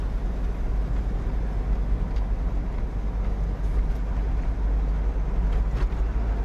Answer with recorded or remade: recorded